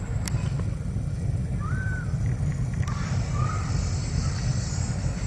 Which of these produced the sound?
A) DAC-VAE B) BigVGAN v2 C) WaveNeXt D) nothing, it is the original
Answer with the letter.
D